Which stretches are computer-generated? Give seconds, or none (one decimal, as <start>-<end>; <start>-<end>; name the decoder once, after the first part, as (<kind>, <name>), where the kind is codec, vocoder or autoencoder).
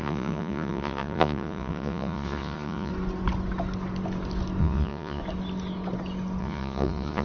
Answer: 0.0-2.9 (vocoder, Vocos); 4.6-5.2; 6.4-7.2